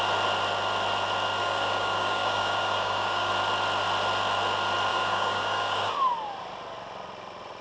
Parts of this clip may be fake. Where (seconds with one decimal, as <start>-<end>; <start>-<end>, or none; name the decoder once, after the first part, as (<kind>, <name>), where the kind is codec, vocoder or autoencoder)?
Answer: 1.4-3.3 (codec, DAC); 4.9-5.9